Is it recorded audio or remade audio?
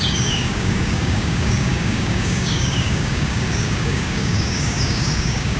remade